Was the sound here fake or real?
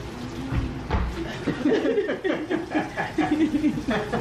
real